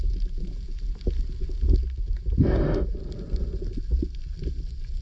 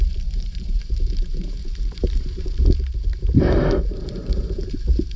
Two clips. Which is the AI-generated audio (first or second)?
second